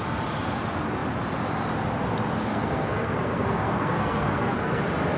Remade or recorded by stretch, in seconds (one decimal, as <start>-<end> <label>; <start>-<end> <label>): 0.0-2.5 recorded; 2.5-4.8 remade; 4.8-5.2 recorded